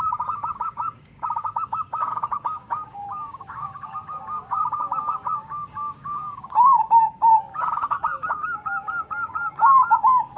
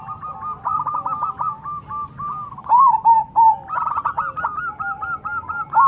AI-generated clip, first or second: first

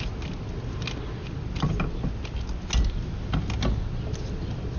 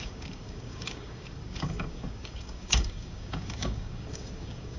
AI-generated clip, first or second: second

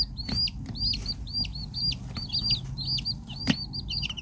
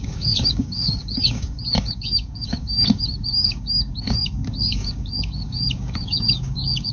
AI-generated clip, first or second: second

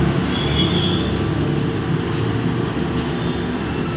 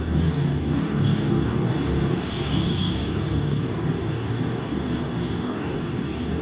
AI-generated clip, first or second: second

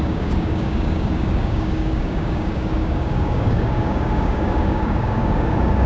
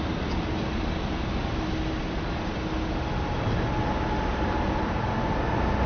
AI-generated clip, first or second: first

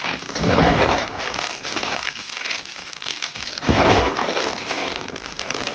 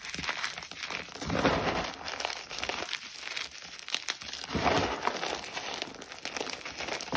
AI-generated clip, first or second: first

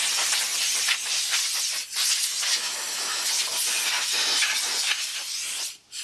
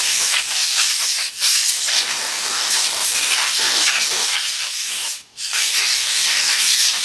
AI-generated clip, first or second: second